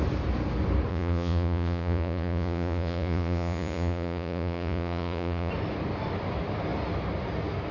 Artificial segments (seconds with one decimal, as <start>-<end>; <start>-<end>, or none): 0.9-5.5